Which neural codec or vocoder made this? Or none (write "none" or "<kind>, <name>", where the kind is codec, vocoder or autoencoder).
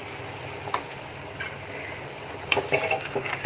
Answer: none